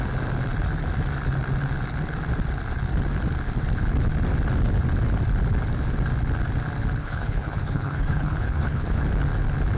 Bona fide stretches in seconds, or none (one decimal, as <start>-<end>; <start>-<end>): 0.0-7.0; 9.0-9.8